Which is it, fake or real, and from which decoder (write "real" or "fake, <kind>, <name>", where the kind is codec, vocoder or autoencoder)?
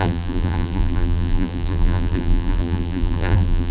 fake, vocoder, BigVGAN v2